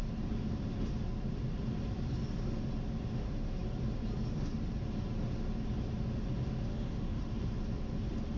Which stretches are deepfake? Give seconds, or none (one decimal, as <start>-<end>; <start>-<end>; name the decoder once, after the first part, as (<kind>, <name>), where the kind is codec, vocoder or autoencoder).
6.7-7.2 (autoencoder, DAC-VAE)